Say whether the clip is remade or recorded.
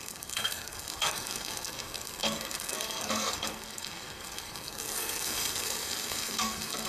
remade